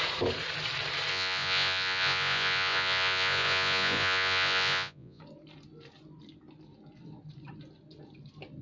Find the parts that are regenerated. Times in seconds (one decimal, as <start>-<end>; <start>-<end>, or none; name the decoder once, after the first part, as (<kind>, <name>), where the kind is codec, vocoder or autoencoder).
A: 1.1-5.2 (vocoder, Vocos)